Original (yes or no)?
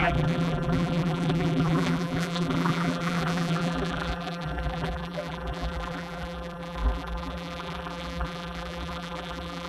no